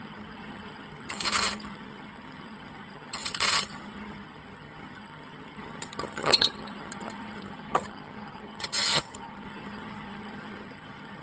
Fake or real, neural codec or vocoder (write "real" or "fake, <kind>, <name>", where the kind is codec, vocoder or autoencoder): fake, vocoder, HiFi-GAN